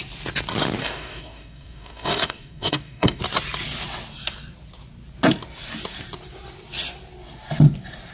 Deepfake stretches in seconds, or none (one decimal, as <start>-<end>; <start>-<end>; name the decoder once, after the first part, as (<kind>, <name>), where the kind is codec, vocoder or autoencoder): 0.8-3.2 (codec, DAC)